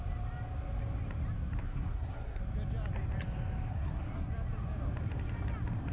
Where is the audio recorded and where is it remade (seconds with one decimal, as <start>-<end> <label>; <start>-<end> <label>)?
0.0-1.7 recorded; 1.7-2.4 remade; 2.4-3.7 recorded; 3.7-4.3 remade; 4.3-5.9 recorded